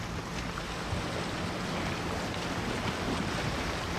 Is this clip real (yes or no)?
yes